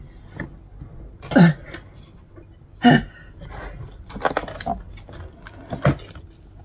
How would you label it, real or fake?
real